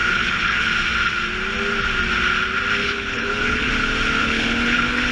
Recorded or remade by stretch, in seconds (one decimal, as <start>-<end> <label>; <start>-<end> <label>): 0.0-0.7 remade; 0.7-2.8 recorded; 2.8-3.7 remade; 3.7-4.2 recorded; 4.2-5.1 remade